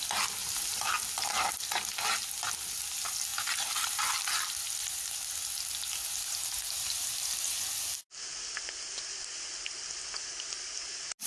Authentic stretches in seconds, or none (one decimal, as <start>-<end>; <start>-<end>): 0.0-0.4; 0.9-11.3